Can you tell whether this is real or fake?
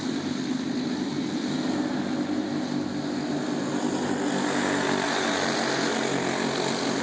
real